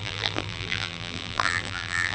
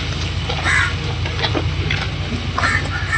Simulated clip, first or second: first